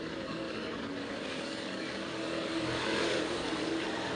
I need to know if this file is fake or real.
fake